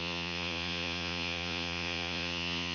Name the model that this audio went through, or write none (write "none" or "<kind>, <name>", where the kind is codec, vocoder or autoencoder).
vocoder, Vocos